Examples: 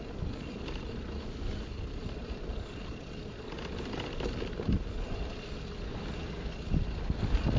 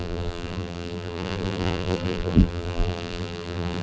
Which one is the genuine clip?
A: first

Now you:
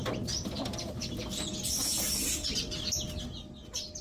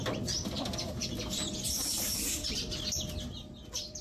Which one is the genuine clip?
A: first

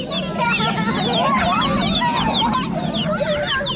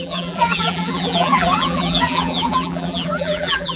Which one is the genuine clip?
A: first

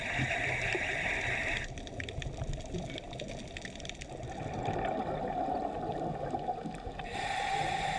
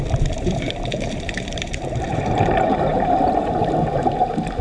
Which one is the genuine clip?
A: first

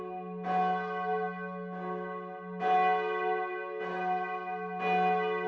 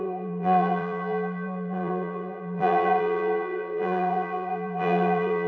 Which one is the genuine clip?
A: first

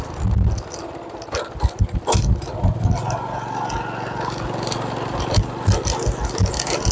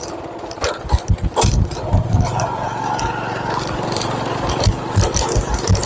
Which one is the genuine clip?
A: first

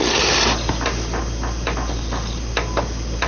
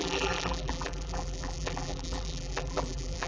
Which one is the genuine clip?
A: first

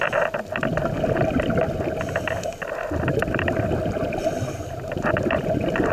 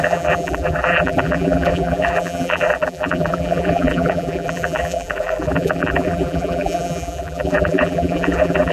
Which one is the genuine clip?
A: first